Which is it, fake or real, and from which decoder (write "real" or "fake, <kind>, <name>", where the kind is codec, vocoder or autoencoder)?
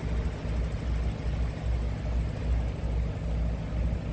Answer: real